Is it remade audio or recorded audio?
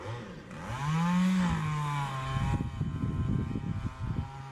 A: recorded